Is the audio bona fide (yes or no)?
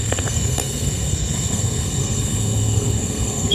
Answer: no